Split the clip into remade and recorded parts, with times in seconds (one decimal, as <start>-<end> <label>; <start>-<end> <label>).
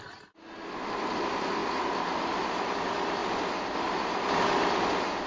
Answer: 0.0-5.3 recorded